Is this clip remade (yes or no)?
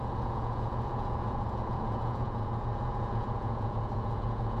yes